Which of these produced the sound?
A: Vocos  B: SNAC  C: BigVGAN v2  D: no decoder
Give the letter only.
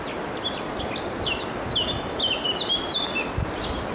D